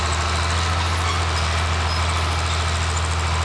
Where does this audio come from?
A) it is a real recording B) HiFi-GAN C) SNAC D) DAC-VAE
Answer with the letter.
A